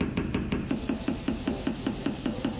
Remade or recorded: remade